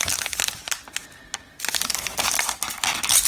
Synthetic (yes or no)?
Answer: no